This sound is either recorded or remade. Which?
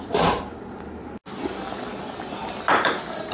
recorded